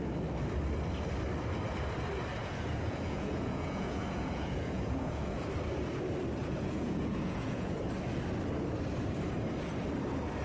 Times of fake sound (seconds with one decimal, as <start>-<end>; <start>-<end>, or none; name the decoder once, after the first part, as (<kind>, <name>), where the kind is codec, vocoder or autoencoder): 2.4-5.5 (vocoder, Vocos); 6.4-7.8